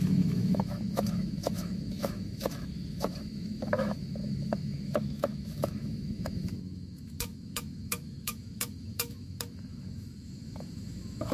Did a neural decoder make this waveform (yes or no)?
yes